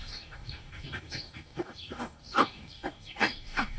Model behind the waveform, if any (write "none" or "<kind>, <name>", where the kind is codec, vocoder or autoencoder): codec, DAC